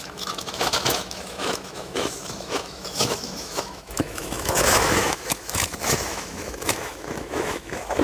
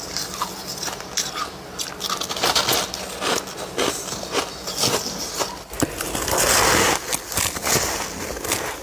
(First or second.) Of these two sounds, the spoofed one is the first